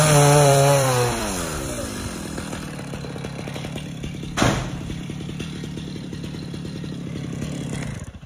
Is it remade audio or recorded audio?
remade